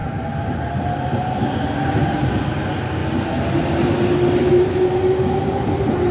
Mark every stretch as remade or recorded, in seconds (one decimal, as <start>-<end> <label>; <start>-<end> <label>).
0.0-6.1 recorded